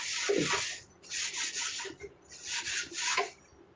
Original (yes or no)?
yes